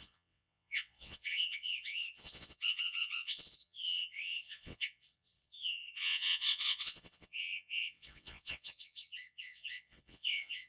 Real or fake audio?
fake